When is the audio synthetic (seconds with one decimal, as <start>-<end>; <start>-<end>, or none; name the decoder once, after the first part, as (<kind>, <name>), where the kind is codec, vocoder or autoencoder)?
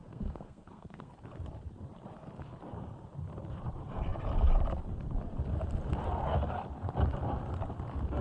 0.0-1.1 (codec, SNAC)